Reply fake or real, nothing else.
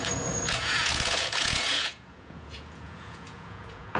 fake